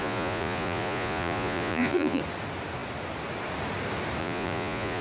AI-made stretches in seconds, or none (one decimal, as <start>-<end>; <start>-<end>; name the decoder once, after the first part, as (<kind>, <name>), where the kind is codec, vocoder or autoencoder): 0.0-2.2 (vocoder, Vocos); 4.2-5.0